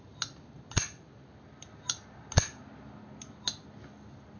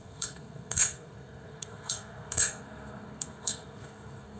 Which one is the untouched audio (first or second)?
first